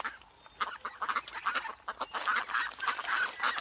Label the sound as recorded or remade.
recorded